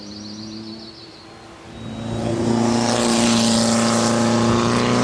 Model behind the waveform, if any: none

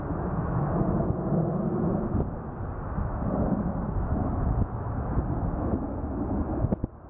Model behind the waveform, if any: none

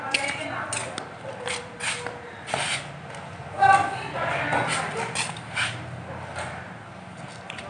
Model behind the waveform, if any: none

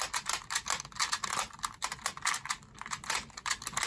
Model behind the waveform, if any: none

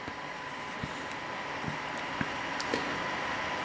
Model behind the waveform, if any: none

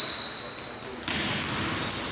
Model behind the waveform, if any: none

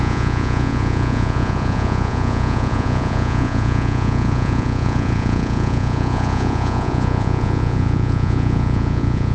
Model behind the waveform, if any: vocoder, Vocos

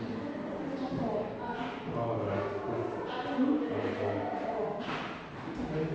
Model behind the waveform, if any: none